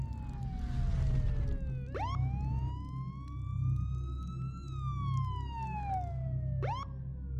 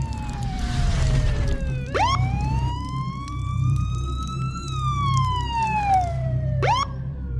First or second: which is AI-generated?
second